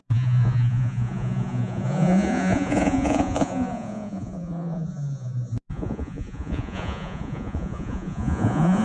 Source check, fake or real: fake